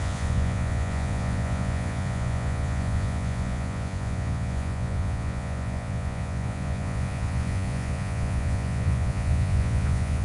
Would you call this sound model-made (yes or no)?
yes